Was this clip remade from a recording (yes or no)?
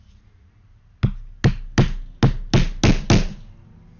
no